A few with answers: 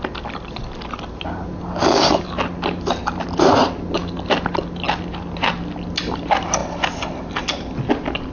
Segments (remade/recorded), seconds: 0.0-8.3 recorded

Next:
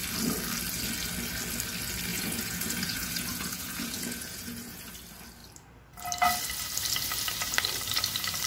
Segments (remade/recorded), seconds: 0.0-2.1 recorded; 2.1-4.9 remade; 4.9-8.5 recorded

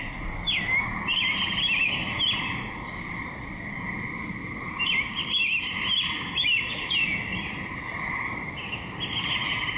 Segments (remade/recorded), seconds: 0.0-9.8 recorded